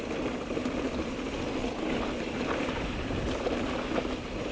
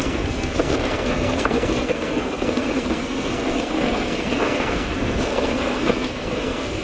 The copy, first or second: second